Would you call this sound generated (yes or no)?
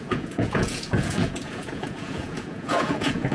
yes